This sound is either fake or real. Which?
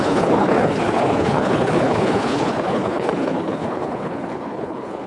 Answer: fake